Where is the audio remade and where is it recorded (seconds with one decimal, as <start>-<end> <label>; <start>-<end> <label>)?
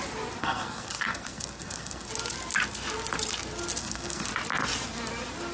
0.0-0.4 recorded; 0.4-2.1 remade; 2.1-3.8 recorded; 3.8-4.3 remade; 4.3-5.5 recorded